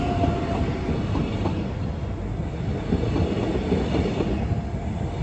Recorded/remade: recorded